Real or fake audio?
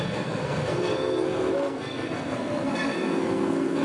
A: fake